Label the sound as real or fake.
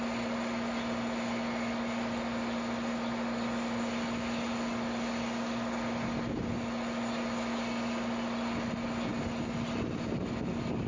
real